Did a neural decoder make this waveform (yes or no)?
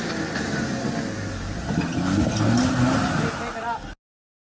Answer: no